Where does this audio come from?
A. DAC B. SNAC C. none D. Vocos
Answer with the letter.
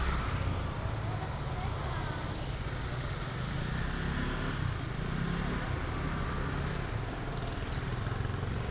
C